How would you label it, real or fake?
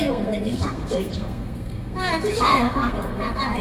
fake